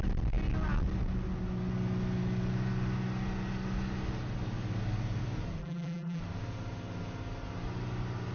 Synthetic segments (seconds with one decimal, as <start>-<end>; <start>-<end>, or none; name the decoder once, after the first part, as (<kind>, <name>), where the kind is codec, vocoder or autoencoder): 5.6-6.2 (vocoder, BigVGAN v2)